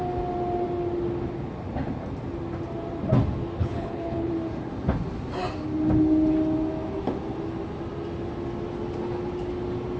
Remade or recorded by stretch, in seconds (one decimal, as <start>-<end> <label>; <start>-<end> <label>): 0.0-3.6 recorded; 3.6-4.3 remade; 4.3-10.0 recorded